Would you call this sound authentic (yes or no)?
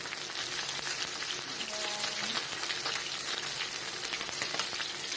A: yes